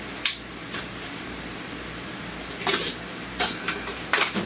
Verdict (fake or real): fake